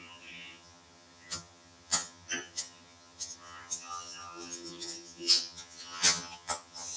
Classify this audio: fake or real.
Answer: fake